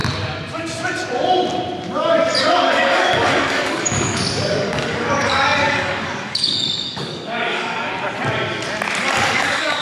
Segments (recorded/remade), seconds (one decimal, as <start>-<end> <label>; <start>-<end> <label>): 0.0-2.4 recorded; 2.4-7.9 remade; 7.9-9.0 recorded; 9.0-9.8 remade